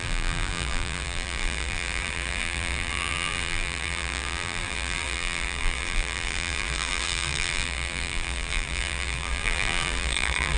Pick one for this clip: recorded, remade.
remade